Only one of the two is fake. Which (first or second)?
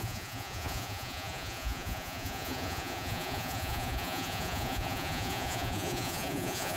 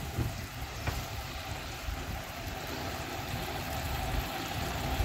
first